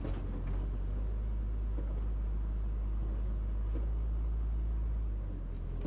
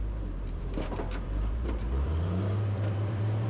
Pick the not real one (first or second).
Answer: second